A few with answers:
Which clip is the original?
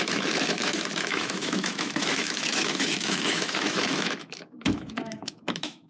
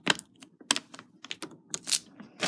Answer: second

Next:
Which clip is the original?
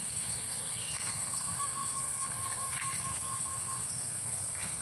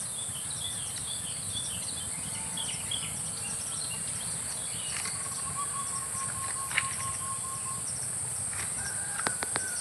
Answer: second